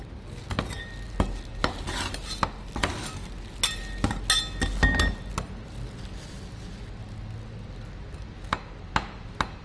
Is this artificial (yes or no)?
no